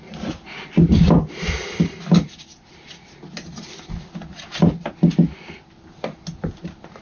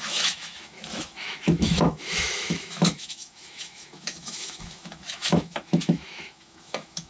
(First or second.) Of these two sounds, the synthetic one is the second